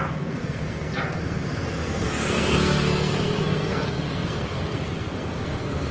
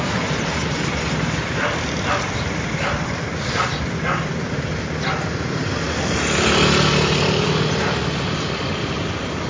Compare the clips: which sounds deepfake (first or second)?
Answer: first